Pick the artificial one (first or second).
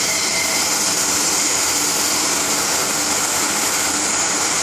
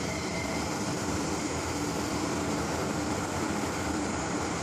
second